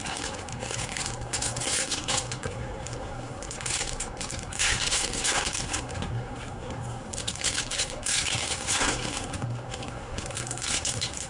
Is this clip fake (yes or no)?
yes